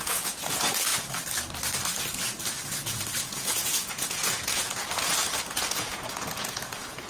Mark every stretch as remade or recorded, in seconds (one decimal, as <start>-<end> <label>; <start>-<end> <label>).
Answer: 0.0-0.9 remade; 0.9-3.2 recorded; 3.2-7.1 remade